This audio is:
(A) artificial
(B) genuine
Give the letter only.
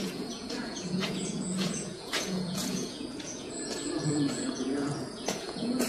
A